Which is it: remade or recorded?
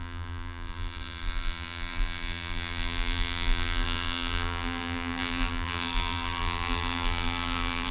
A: remade